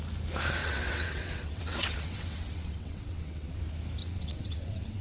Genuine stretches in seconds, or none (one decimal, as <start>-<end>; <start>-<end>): 0.0-0.6; 3.6-4.0